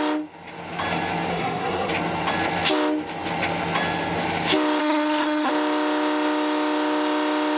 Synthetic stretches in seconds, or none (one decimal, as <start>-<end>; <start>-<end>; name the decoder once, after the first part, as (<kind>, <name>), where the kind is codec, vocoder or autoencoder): 1.3-1.9 (codec, SNAC); 4.8-5.5